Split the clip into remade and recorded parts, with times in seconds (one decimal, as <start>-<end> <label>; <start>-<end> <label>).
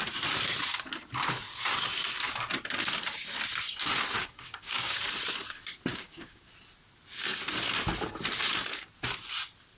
0.0-4.2 recorded; 4.2-5.0 remade; 5.0-5.9 recorded; 5.9-6.5 remade; 6.5-9.8 recorded